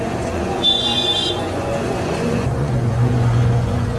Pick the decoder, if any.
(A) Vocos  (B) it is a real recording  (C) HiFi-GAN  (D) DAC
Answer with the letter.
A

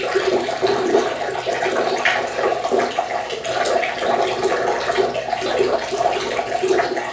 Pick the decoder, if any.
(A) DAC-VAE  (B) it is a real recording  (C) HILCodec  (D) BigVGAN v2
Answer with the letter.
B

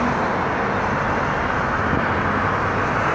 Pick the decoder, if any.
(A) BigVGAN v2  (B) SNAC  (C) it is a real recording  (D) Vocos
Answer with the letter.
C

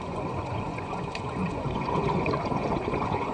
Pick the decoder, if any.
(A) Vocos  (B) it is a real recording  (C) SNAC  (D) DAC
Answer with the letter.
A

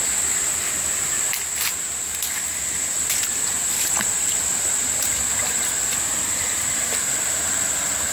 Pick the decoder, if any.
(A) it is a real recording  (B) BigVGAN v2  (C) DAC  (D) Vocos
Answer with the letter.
A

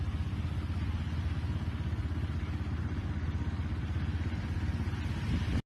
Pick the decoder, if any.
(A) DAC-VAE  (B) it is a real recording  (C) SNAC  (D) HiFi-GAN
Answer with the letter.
B